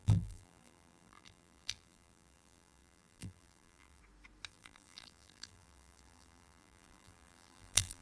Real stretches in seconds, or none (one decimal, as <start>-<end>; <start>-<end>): 4.0-4.5